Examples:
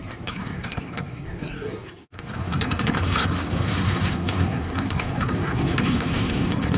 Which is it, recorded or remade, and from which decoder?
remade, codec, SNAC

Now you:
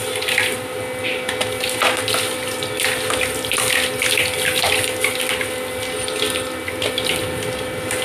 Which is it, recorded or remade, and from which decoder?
recorded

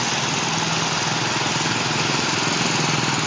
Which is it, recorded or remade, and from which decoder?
recorded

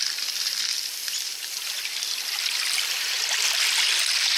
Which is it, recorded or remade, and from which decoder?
remade, vocoder, BigVGAN v2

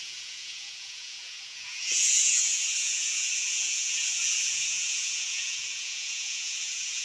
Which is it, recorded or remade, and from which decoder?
remade, vocoder, Vocos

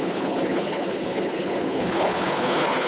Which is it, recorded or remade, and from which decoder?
remade, codec, HILCodec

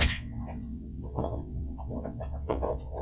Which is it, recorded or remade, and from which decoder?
remade, vocoder, WaveNeXt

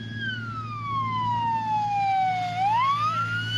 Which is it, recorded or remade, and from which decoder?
recorded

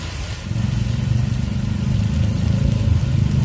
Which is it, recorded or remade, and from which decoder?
recorded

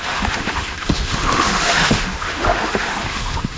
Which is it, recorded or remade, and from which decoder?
remade, autoencoder, DAC-VAE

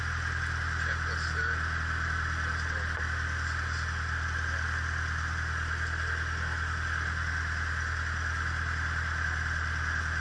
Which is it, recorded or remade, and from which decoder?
recorded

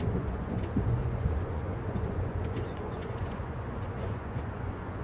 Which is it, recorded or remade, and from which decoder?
remade, vocoder, Vocos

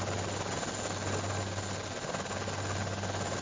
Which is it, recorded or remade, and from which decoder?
recorded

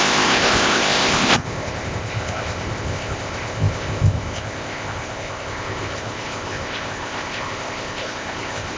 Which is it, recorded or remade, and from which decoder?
remade, codec, ZipCodec